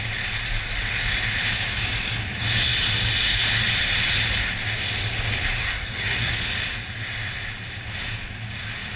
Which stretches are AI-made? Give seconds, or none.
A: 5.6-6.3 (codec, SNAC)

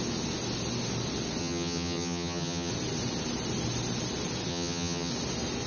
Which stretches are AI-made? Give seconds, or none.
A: 1.4-2.7 (vocoder, HiFi-GAN); 4.5-5.1

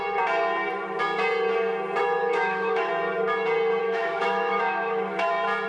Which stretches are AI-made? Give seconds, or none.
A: 2.2-2.9 (autoencoder, DAC-VAE); 3.8-5.3

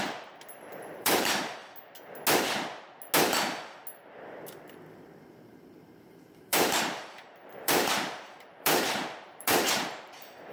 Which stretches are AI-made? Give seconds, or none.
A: 0.0-1.6 (vocoder, BigVGAN v2); 4.9-10.5

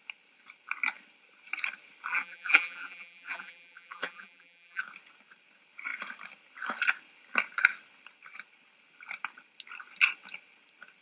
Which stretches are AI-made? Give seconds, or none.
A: 2.1-4.8 (vocoder, BigVGAN v2)

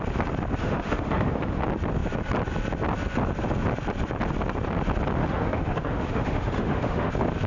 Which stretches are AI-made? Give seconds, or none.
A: 0.6-1.6 (autoencoder, DAC-VAE); 5.2-7.1